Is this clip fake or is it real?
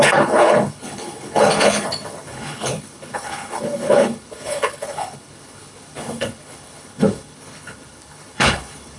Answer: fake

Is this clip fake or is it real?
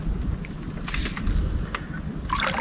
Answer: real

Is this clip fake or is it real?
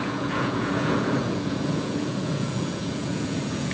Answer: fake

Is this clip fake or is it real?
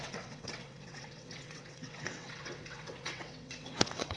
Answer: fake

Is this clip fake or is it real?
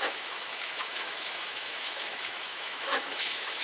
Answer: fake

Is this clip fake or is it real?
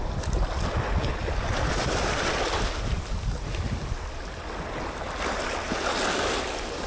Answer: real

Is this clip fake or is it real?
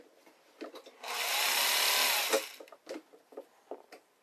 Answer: real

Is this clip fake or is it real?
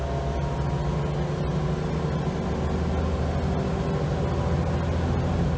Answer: real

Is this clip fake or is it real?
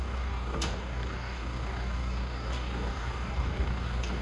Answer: fake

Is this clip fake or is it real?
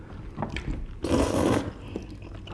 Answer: real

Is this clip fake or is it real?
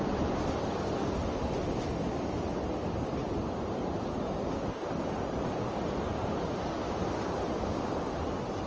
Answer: real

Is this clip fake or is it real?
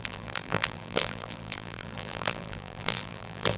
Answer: fake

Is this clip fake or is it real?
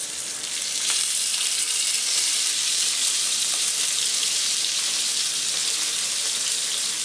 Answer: fake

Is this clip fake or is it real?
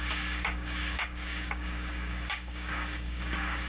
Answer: fake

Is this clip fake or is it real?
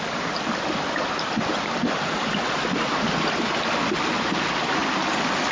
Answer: real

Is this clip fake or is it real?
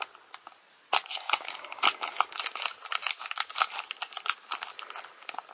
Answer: real